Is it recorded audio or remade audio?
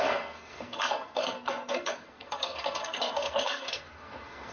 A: remade